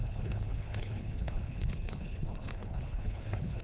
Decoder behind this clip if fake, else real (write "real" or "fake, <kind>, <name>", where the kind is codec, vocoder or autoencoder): fake, codec, HILCodec